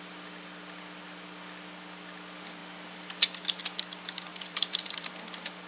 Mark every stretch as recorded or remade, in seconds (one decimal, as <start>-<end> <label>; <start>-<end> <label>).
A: 0.0-4.3 recorded; 4.3-5.1 remade; 5.1-5.7 recorded